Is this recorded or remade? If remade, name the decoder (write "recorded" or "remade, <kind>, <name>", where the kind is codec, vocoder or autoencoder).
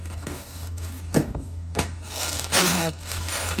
remade, codec, DAC